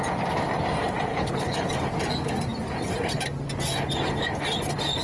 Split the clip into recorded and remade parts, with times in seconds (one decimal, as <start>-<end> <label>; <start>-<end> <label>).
0.0-1.1 recorded; 1.1-1.7 remade; 1.7-5.0 recorded